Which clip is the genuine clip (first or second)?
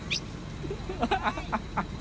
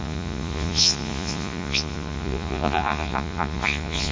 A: first